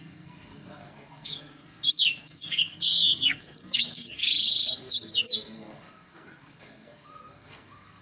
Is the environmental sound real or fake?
fake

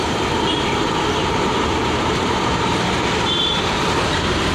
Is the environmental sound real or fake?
fake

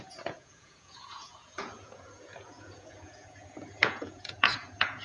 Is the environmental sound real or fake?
fake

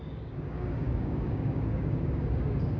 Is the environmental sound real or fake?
fake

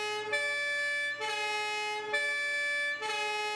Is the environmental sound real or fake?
real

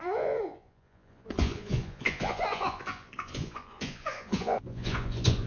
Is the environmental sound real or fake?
fake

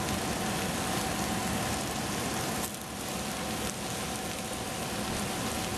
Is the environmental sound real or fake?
real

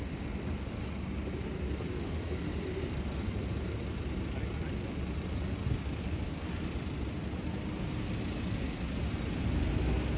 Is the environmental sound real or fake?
real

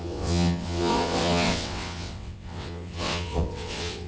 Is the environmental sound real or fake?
fake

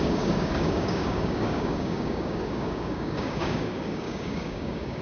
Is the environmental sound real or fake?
fake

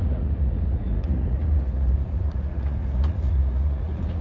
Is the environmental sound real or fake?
fake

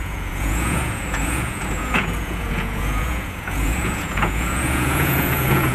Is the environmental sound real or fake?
fake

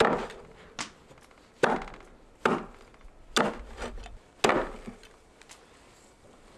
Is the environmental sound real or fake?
real